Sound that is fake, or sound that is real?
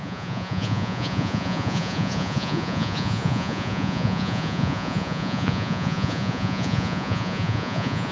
fake